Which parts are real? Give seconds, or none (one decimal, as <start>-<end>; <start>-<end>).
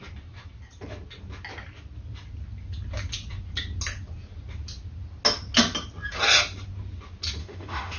0.0-7.4